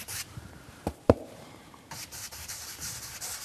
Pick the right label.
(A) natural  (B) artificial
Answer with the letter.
B